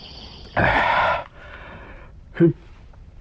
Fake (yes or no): yes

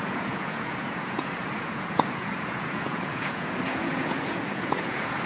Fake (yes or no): yes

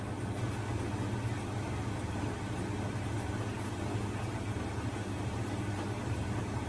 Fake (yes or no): no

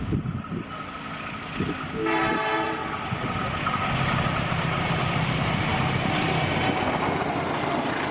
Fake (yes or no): no